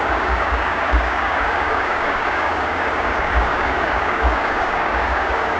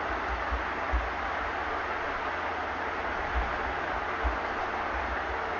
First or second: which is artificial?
first